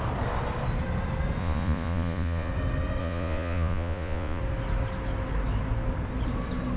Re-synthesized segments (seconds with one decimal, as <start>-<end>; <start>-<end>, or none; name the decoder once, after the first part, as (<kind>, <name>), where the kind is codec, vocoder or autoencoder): 1.4-2.5 (vocoder, Vocos); 3.0-4.4